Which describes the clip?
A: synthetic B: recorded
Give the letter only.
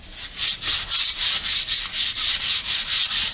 B